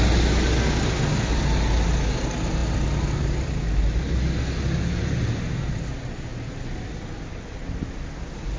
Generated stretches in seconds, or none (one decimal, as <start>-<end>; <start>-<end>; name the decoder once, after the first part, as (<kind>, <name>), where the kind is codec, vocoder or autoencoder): none